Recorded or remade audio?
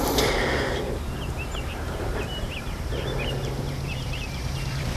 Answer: remade